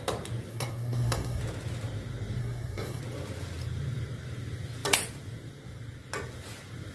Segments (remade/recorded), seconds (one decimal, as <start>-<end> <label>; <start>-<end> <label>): 0.0-0.5 recorded; 0.5-1.4 remade; 1.4-2.4 recorded; 2.4-3.0 remade; 3.0-6.9 recorded